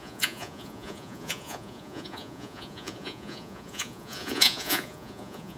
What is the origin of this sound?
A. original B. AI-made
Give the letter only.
B